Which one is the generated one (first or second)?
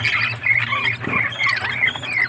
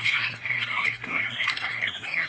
second